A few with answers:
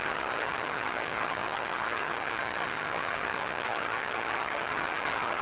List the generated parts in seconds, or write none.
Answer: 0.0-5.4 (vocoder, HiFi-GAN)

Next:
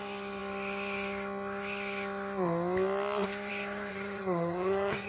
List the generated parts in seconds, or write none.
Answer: 3.9-5.1 (vocoder, HiFi-GAN)

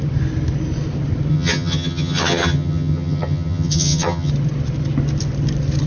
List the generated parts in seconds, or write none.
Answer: 1.3-4.3 (vocoder, HiFi-GAN)

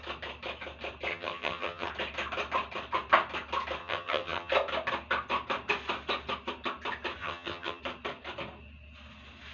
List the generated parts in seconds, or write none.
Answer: 1.1-1.9 (vocoder, HiFi-GAN); 3.8-4.5; 7.2-7.8

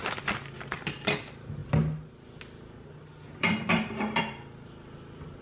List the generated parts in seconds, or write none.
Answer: none

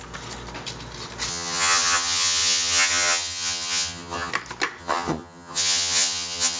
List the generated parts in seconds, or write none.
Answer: 1.3-4.3 (vocoder, HiFi-GAN); 4.8-6.6

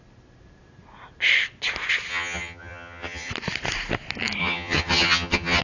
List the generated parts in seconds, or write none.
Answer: 2.1-3.3 (vocoder, HiFi-GAN); 4.4-5.6

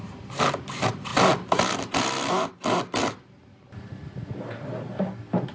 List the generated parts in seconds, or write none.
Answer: none